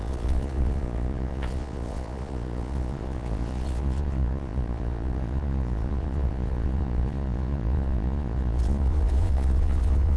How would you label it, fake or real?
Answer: fake